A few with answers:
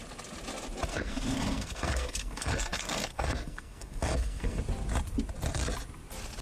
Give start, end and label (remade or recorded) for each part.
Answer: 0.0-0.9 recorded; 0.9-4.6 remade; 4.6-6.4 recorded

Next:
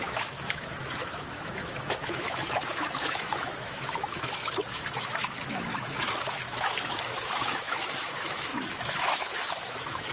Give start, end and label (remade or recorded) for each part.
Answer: 0.0-10.1 remade

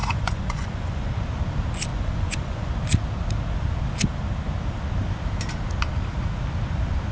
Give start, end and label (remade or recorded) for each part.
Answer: 0.0-1.1 remade; 1.1-1.9 recorded; 1.9-2.7 remade; 2.7-7.1 recorded

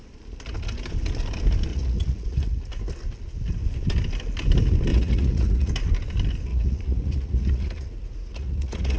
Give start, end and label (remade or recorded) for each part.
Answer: 0.0-1.7 recorded; 1.7-2.8 remade; 2.8-4.9 recorded; 4.9-5.7 remade; 5.7-6.5 recorded; 6.5-9.0 remade

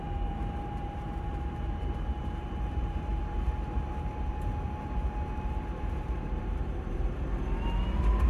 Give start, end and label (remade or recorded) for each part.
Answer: 0.0-8.3 remade

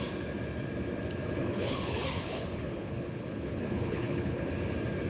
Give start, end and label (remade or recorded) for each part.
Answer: 0.0-1.4 recorded; 1.4-4.5 remade; 4.5-5.1 recorded